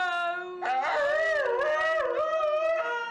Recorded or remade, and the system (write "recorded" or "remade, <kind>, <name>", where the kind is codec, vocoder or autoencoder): recorded